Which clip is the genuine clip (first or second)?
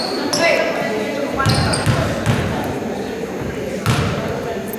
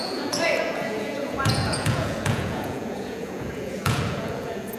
first